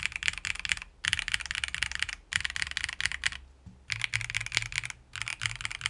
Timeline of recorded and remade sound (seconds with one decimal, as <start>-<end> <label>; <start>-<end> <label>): 0.0-5.9 recorded